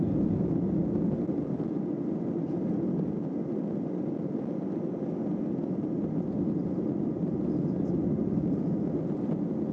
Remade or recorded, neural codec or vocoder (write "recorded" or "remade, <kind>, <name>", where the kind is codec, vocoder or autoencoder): recorded